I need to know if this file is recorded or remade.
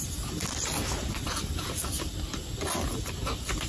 recorded